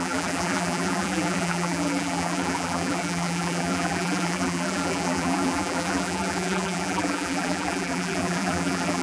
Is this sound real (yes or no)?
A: no